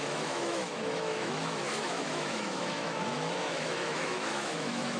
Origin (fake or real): fake